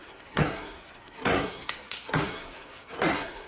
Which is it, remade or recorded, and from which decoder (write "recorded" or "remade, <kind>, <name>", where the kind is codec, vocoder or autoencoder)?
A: remade, codec, SNAC